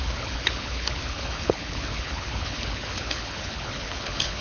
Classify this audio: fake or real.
fake